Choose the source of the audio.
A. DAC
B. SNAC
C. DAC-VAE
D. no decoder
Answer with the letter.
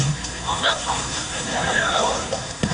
B